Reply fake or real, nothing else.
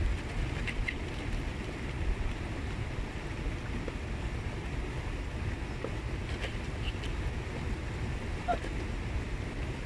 real